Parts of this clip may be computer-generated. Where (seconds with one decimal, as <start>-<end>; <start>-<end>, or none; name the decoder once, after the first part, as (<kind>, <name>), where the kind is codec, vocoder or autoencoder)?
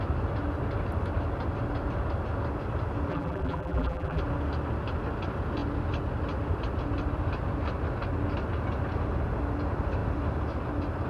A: 3.1-4.2 (vocoder, BigVGAN v2)